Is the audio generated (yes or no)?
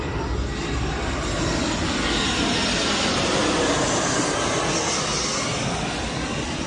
no